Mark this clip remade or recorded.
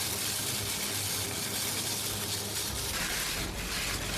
recorded